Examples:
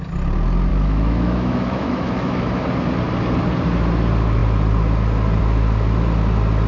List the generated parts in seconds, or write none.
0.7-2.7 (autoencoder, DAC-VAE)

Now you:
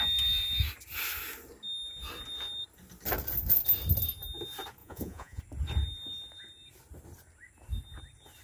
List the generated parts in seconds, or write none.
4.8-5.4 (vocoder, Vocos)

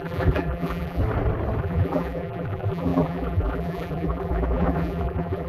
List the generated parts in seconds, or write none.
0.0-1.0 (vocoder, BigVGAN v2); 1.6-5.5

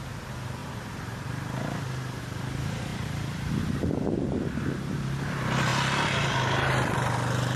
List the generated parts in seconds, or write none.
2.9-3.8 (vocoder, BigVGAN v2)